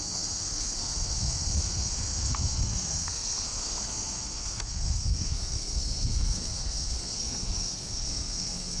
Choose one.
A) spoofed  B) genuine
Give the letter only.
A